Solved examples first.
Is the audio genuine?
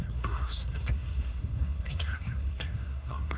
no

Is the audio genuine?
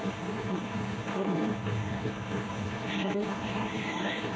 no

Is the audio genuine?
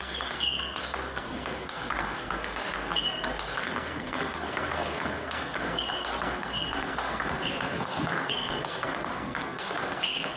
no